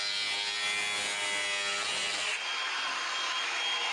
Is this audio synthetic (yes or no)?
no